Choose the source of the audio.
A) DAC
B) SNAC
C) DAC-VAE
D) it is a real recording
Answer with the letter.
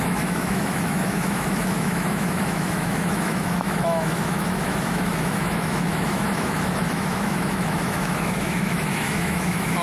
C